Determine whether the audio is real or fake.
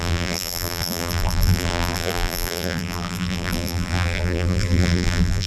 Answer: fake